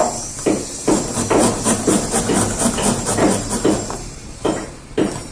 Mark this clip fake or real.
real